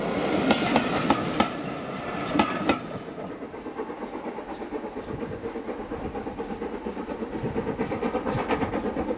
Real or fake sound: real